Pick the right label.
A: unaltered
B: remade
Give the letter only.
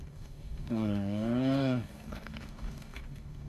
B